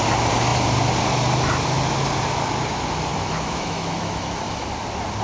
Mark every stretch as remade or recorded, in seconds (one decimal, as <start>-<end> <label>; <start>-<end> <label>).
0.0-3.1 recorded; 3.1-4.6 remade; 4.6-5.2 recorded